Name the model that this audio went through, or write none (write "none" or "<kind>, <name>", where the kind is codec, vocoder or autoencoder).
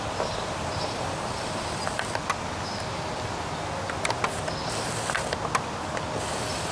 none